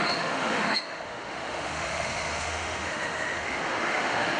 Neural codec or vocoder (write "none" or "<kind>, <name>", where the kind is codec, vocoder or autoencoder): autoencoder, DAC-VAE